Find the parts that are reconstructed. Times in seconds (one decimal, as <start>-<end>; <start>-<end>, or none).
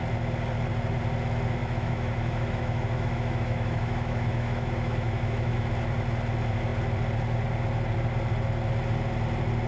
1.6-5.7